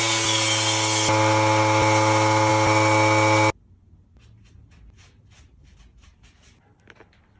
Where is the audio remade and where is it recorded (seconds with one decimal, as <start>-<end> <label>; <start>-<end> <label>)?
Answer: 0.0-7.4 recorded